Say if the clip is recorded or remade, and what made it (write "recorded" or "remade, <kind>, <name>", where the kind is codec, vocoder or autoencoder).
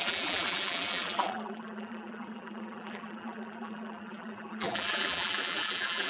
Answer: remade, vocoder, BigVGAN v2